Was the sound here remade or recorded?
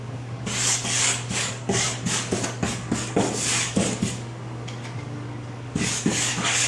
remade